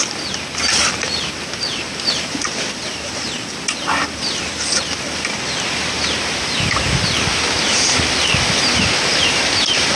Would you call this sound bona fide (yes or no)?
yes